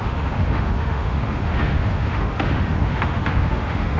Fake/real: fake